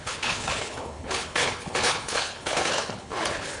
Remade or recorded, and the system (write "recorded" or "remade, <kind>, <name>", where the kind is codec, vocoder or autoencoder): remade, codec, HILCodec